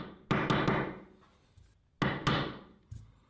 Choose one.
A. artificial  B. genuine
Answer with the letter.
B